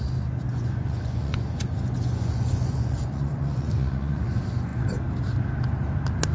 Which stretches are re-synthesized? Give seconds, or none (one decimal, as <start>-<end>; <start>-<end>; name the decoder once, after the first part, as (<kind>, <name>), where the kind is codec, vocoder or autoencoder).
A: 0.5-4.3 (vocoder, Vocos)